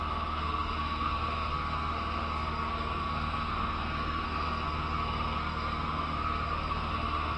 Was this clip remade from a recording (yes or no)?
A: yes